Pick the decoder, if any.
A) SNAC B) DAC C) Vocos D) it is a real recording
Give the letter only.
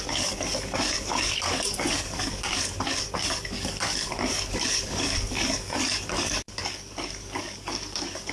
B